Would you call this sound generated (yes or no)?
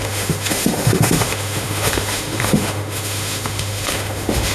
yes